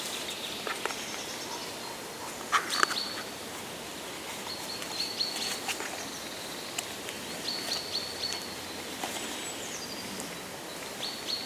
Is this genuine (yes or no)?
yes